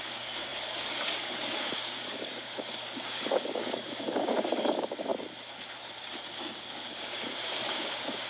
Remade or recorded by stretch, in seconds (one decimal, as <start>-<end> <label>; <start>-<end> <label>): 0.0-5.1 remade; 5.1-6.3 recorded; 6.3-8.3 remade